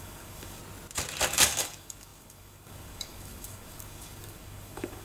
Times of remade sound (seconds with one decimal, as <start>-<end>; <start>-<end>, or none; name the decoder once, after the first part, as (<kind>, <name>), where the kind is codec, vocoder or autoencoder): 0.0-0.6 (codec, DAC); 1.3-5.0